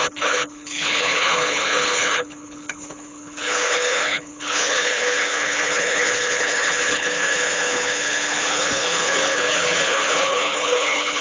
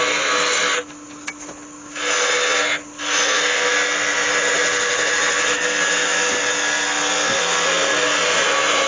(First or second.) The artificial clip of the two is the first